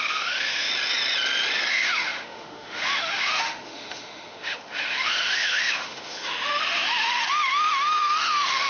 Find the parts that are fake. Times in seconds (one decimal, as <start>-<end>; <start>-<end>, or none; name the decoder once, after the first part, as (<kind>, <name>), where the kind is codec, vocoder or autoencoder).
0.0-0.7 (autoencoder, DAC-VAE); 1.7-8.7